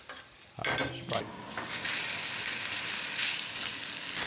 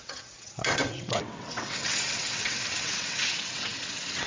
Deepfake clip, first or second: second